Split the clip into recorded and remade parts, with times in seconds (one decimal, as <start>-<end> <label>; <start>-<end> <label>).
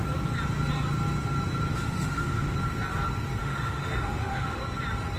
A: 0.0-1.7 recorded; 1.7-2.5 remade; 2.5-3.4 recorded; 3.4-4.6 remade; 4.6-5.2 recorded